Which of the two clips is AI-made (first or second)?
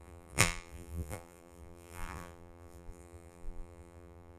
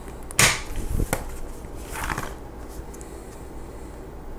first